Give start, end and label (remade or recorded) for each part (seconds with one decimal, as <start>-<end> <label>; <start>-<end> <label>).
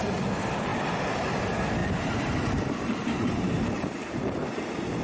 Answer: 0.0-0.7 recorded; 0.7-1.4 remade; 1.4-1.8 recorded; 1.8-5.0 remade